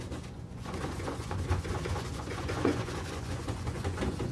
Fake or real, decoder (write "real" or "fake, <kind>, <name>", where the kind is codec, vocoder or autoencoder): fake, vocoder, Vocos